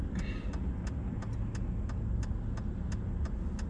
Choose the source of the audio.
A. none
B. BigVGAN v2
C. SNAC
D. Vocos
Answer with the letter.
A